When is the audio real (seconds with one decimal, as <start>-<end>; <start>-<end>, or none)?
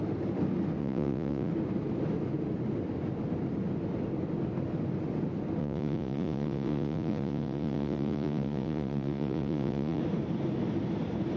0.0-0.8; 1.5-5.6; 10.0-11.4